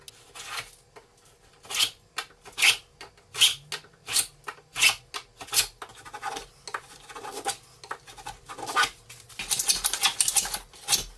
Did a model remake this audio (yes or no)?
no